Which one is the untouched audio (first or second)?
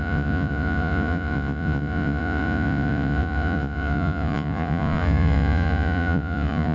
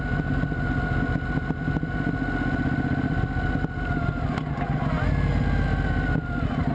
second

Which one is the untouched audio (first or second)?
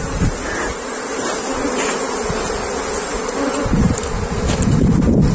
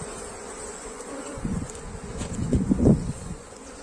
first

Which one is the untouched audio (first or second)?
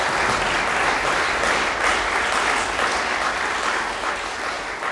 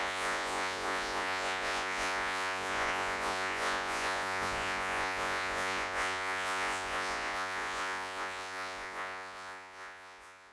first